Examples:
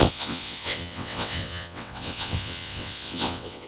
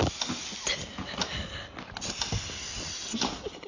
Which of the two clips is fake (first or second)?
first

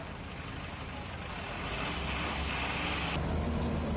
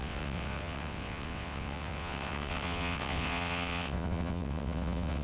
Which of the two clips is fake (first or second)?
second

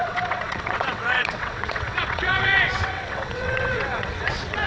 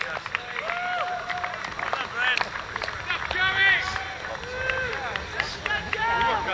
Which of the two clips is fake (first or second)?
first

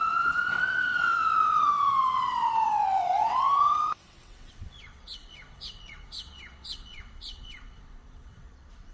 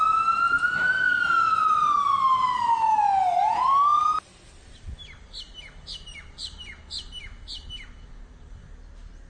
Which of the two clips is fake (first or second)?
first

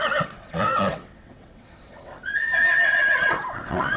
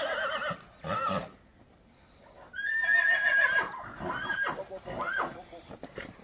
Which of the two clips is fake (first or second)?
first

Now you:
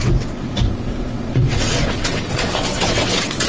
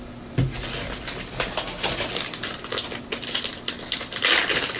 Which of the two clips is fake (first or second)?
first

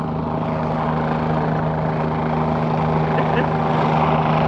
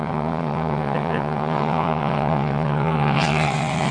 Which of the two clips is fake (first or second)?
second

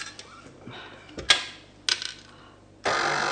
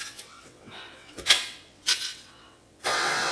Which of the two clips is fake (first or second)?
second